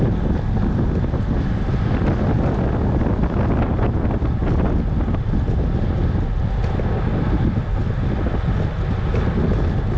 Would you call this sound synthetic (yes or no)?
no